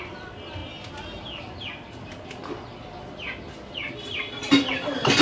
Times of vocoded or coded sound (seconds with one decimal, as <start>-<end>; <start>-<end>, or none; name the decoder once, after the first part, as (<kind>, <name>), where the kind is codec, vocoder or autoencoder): none